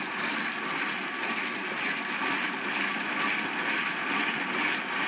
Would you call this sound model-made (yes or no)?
no